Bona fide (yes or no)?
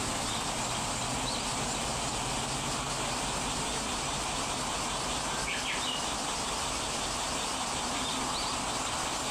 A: yes